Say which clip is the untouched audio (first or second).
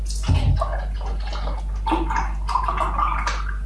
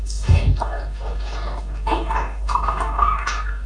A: first